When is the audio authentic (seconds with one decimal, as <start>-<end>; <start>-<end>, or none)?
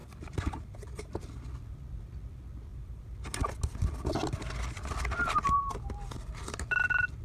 1.1-2.7; 3.4-7.2